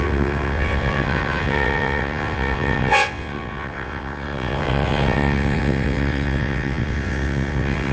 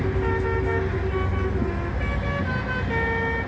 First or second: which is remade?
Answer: first